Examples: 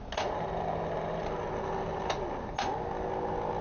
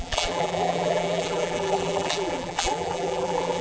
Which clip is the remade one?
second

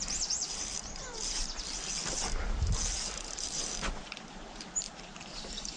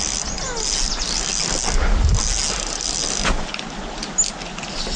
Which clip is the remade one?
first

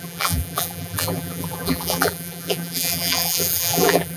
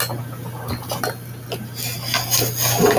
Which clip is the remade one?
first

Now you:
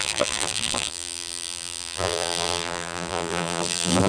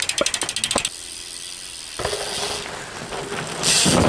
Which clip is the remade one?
first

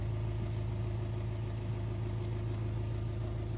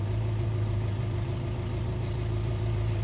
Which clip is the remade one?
second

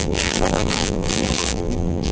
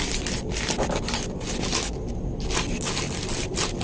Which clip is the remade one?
first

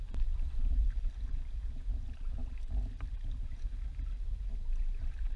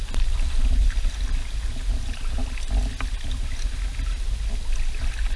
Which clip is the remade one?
first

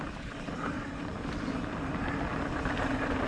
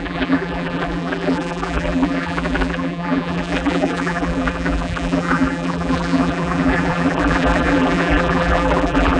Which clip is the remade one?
second